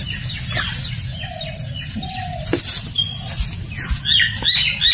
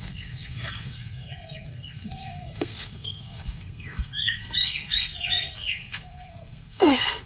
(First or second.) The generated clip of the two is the second